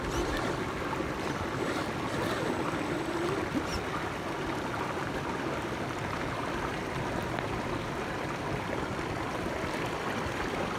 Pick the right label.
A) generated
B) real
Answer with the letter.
B